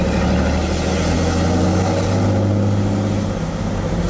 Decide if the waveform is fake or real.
real